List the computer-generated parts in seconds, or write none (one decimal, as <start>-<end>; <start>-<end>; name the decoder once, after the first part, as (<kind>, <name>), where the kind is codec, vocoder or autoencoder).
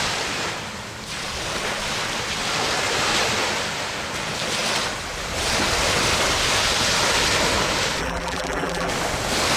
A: 8.0-8.9 (vocoder, BigVGAN v2)